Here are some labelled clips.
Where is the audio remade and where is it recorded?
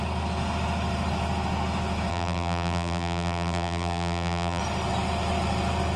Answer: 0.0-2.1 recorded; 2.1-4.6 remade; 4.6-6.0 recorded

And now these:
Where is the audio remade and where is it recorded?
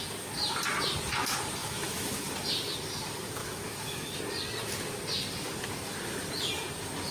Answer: 0.0-1.6 recorded; 1.6-2.3 remade; 2.3-3.4 recorded; 3.4-4.2 remade; 4.2-7.1 recorded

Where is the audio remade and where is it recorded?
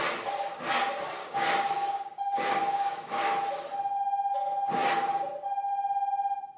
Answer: 0.0-1.2 recorded; 1.2-3.3 remade; 3.3-6.6 recorded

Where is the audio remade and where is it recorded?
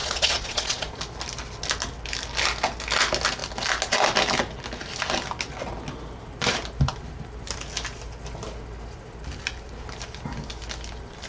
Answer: 0.0-1.0 remade; 1.0-11.3 recorded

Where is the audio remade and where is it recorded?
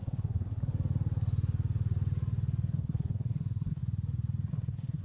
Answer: 0.0-0.7 remade; 0.7-2.7 recorded; 2.7-3.8 remade; 3.8-4.5 recorded; 4.5-5.0 remade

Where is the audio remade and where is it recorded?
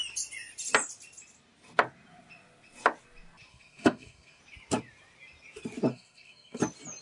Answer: 0.0-3.5 recorded; 3.5-4.4 remade; 4.4-5.9 recorded; 5.9-6.6 remade; 6.6-7.0 recorded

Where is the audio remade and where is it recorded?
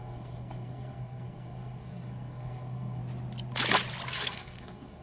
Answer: 0.0-3.0 remade; 3.0-4.1 recorded; 4.1-5.0 remade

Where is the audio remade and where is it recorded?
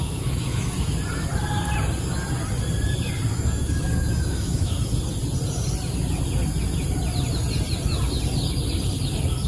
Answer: 0.0-0.7 remade; 0.7-3.3 recorded; 3.3-4.9 remade; 4.9-9.5 recorded